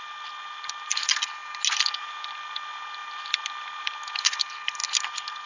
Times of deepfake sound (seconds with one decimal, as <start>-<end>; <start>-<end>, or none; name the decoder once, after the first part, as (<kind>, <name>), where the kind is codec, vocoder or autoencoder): 0.0-1.4 (vocoder, BigVGAN v2); 2.0-4.8